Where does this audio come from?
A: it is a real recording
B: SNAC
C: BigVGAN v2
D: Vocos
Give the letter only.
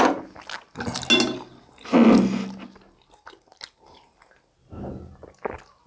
A